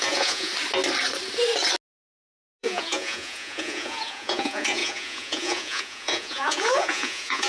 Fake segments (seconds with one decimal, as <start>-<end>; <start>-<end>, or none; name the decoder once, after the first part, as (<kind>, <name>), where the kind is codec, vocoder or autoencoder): 0.0-0.5 (vocoder, Vocos); 2.6-7.5